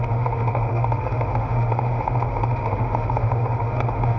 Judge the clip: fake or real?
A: fake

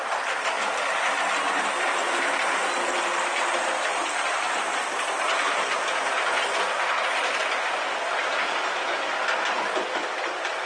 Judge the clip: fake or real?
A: real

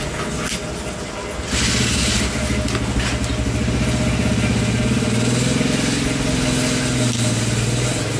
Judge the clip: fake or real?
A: real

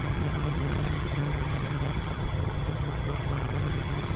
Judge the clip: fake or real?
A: fake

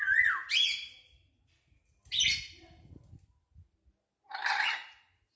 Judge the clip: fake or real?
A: real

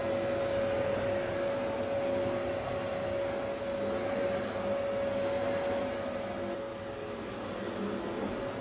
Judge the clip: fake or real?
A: real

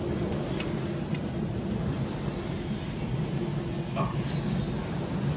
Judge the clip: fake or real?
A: real